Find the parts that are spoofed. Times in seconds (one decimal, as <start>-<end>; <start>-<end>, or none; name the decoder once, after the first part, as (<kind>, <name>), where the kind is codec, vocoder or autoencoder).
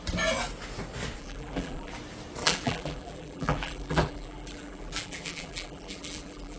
1.2-1.9 (vocoder, BigVGAN v2); 2.4-6.6